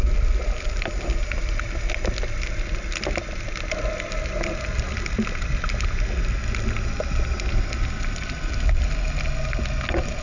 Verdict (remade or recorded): recorded